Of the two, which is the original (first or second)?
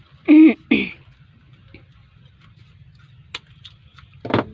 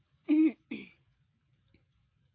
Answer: first